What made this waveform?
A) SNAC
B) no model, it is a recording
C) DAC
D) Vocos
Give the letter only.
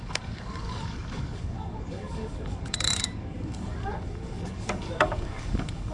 C